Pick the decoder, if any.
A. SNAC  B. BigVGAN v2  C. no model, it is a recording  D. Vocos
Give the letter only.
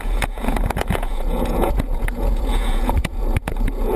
D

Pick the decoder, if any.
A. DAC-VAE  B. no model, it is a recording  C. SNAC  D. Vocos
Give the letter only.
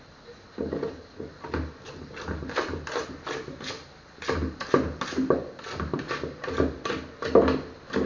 B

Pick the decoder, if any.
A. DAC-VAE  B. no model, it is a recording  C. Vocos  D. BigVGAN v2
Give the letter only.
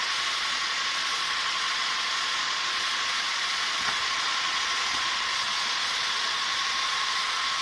C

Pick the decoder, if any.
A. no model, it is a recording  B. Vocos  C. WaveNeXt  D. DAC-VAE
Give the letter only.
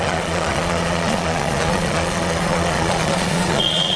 B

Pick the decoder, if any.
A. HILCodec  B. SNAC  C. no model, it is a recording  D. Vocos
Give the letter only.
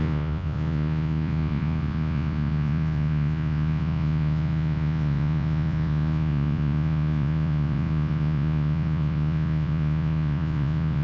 D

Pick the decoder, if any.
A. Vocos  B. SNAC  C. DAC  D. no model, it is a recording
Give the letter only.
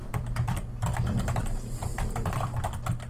D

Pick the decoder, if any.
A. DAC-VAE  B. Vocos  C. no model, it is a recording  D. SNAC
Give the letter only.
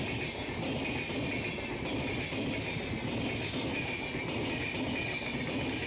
C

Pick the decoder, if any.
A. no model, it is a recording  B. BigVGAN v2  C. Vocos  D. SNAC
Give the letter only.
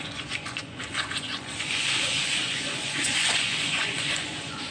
C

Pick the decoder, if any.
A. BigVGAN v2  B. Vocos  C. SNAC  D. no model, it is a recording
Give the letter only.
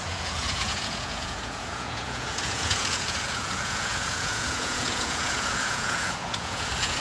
B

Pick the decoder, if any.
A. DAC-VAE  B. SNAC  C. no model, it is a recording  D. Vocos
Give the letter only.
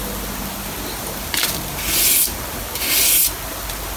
C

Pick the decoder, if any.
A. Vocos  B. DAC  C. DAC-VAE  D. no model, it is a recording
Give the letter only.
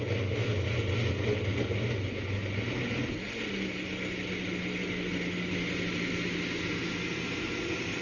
D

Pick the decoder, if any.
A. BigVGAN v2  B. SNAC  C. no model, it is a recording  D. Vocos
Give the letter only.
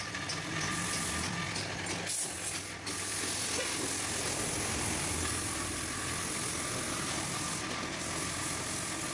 C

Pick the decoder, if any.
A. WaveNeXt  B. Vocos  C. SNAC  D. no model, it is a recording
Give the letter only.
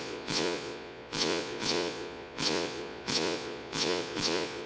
B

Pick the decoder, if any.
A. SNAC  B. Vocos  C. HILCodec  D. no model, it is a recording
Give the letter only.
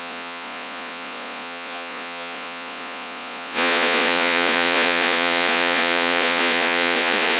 B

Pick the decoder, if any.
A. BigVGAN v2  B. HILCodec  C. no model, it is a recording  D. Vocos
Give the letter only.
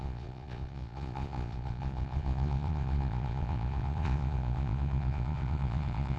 D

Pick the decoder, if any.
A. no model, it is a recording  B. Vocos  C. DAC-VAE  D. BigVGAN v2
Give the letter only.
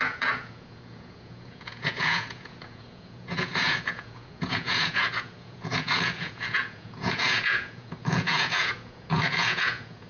B